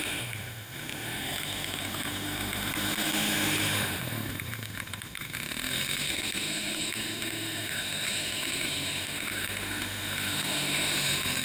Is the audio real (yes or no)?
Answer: no